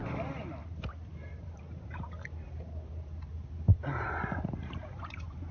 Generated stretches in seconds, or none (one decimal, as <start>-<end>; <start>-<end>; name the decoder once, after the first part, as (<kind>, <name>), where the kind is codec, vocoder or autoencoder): 1.3-2.1 (vocoder, BigVGAN v2); 3.7-5.5